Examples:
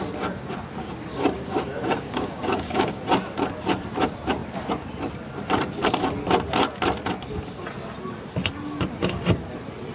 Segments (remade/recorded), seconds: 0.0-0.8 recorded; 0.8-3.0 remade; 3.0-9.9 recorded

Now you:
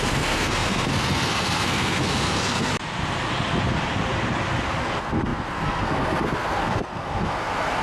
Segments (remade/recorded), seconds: 0.0-2.7 remade; 2.7-4.8 recorded; 4.8-7.8 remade

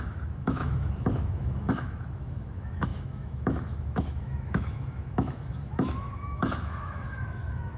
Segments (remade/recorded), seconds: 0.0-7.8 remade

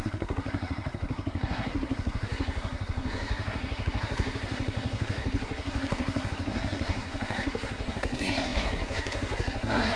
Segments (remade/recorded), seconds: 0.0-10.0 remade

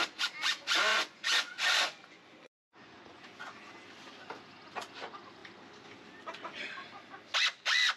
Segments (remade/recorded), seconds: 0.0-0.9 recorded; 0.9-3.7 remade; 3.7-8.0 recorded

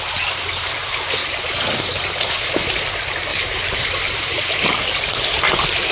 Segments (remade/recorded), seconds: 0.0-1.2 recorded; 1.2-2.1 remade; 2.1-3.3 recorded; 3.3-4.7 remade; 4.7-5.9 recorded